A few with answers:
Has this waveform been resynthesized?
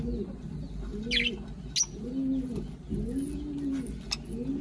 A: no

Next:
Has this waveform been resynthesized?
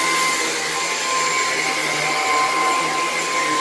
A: no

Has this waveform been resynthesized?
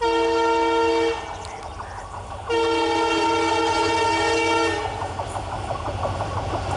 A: no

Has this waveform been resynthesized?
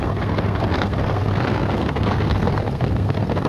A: yes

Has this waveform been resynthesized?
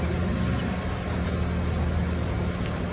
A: no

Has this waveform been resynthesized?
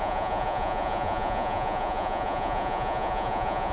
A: yes